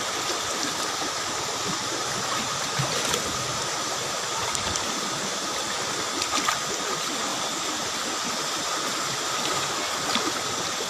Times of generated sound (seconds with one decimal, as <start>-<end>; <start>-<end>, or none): 1.8-2.4; 3.5-4.7